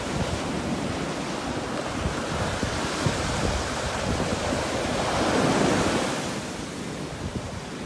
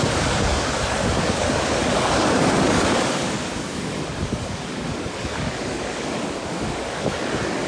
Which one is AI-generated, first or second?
second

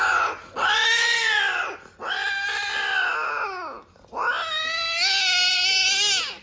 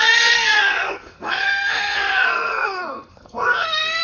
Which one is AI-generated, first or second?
second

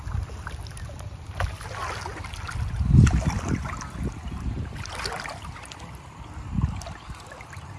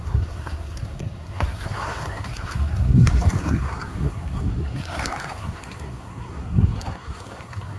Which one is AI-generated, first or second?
second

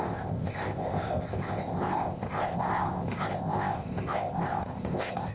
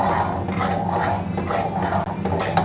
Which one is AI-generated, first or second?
first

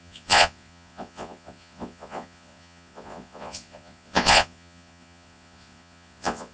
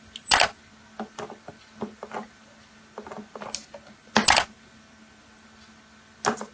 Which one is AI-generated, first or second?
first